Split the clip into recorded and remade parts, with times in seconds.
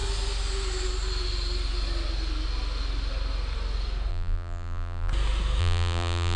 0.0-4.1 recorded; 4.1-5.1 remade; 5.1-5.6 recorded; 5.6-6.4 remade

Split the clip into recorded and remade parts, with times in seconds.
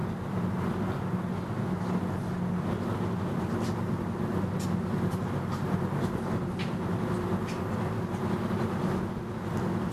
0.0-9.9 recorded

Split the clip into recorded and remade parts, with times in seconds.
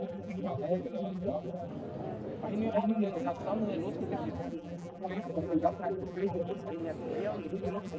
0.0-1.7 remade; 1.7-2.7 recorded; 2.7-3.4 remade; 3.4-4.3 recorded; 4.3-6.8 remade; 6.8-7.4 recorded; 7.4-8.0 remade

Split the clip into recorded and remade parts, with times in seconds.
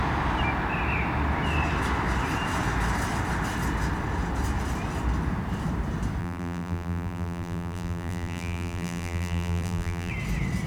0.0-6.2 recorded; 6.2-10.1 remade; 10.1-10.7 recorded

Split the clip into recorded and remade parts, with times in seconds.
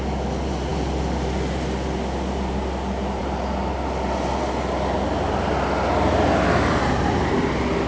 0.0-7.9 recorded